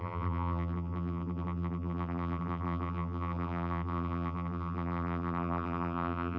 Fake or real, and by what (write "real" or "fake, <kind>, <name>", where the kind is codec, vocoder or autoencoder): fake, vocoder, BigVGAN v2